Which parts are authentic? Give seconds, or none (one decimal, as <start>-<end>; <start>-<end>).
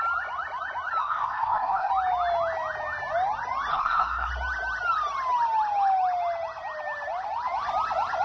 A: 0.0-1.0; 1.9-3.7; 4.3-8.2